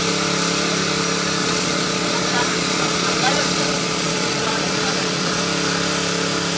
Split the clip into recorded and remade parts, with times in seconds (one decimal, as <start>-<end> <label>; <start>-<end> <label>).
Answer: 0.0-1.4 recorded; 1.4-5.4 remade; 5.4-6.6 recorded